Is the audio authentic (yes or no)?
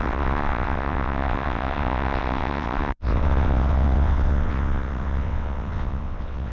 no